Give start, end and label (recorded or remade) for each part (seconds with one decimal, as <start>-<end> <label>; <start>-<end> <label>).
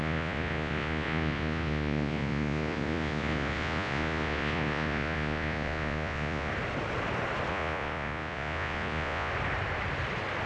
0.0-6.5 remade; 6.5-7.5 recorded; 7.5-9.3 remade; 9.3-10.5 recorded